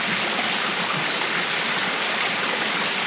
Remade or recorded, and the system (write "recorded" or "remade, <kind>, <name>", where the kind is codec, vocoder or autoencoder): recorded